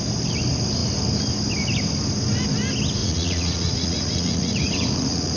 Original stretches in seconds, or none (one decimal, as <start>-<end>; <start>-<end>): 0.0-3.0